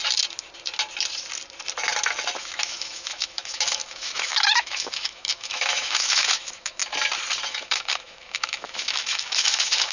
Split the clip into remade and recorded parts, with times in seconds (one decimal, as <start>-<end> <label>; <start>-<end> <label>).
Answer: 0.0-2.4 recorded; 2.4-6.8 remade; 6.8-7.5 recorded; 7.5-9.9 remade